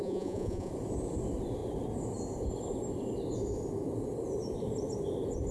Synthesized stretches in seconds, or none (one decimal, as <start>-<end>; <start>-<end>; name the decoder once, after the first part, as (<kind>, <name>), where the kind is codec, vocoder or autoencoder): 0.0-0.7 (vocoder, Vocos)